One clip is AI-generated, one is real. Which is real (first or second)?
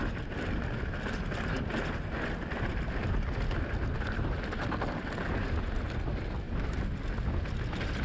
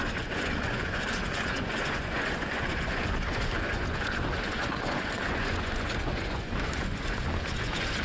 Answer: first